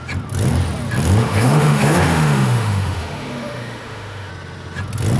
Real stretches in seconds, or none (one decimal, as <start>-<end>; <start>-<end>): 0.0-1.2; 4.3-5.2